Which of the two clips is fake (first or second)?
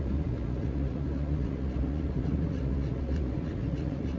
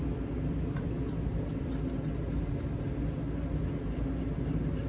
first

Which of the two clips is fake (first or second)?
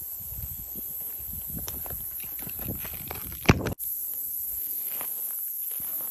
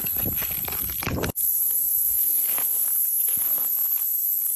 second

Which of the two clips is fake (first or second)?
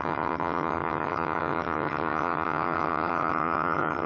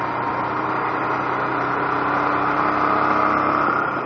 first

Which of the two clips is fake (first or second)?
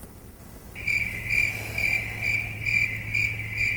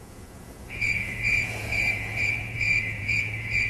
second